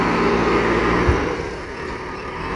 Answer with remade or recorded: recorded